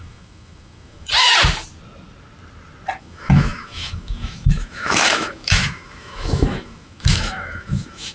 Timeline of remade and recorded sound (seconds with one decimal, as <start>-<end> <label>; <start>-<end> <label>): 0.0-1.1 remade; 1.1-3.0 recorded; 3.0-8.1 remade